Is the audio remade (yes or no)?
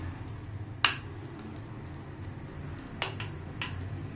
no